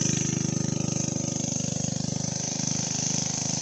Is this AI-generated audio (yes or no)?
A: no